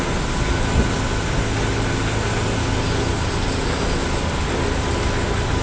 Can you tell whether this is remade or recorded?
recorded